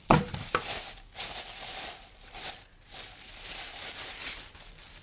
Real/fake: real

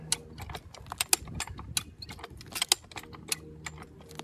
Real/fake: real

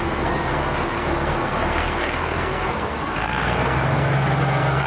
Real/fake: fake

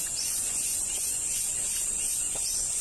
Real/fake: fake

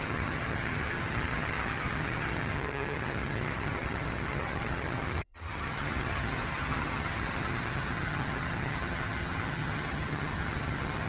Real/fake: fake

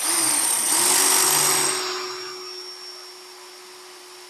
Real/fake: real